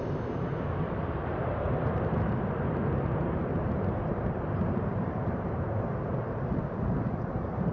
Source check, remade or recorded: remade